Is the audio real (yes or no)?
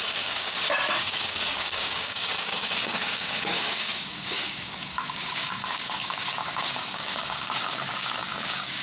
no